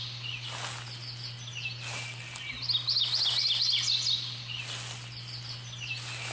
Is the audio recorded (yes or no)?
yes